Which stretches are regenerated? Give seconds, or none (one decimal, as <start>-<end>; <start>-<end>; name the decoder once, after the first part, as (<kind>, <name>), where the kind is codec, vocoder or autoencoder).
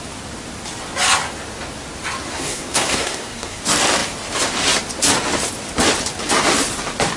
2.3-3.6 (codec, SNAC)